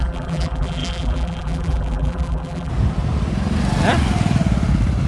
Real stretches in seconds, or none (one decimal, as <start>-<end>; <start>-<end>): 2.7-5.1